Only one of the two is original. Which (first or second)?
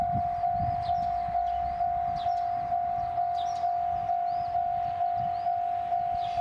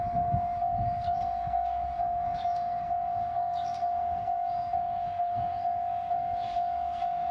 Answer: first